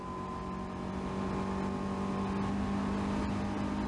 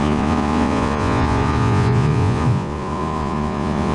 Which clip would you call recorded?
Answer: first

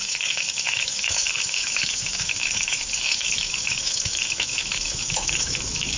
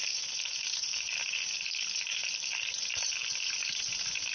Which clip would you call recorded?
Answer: second